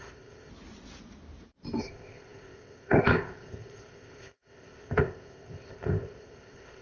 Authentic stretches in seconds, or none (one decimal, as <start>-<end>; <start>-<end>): 0.5-1.8